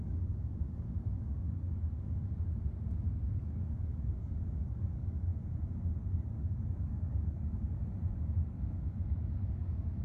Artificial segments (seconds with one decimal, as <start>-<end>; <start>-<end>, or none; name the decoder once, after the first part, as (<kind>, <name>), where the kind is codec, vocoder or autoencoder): 0.0-2.3 (codec, DAC); 3.4-5.3; 6.3-7.8; 8.5-10.0